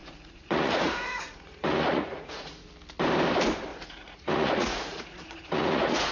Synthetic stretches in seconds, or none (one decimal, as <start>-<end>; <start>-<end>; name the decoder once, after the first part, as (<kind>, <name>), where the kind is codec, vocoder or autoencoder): 0.0-2.7 (vocoder, Vocos); 3.7-6.1